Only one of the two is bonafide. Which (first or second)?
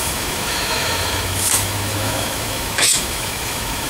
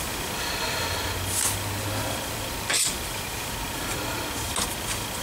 second